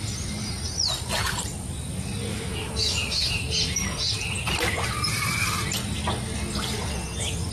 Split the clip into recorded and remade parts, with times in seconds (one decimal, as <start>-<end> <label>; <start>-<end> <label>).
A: 0.0-2.3 recorded; 2.3-3.4 remade; 3.4-7.5 recorded